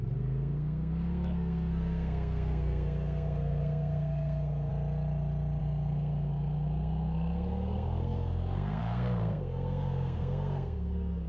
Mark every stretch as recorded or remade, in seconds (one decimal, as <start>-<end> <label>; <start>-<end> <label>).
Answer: 0.0-4.7 remade; 4.7-5.6 recorded; 5.6-11.3 remade